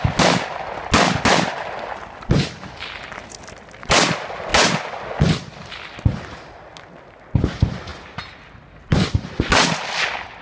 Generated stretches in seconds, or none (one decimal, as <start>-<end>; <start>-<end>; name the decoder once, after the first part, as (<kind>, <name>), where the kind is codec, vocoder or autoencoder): none